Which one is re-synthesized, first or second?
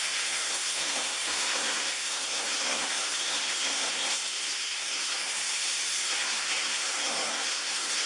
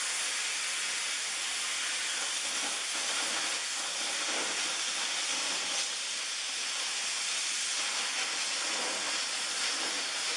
first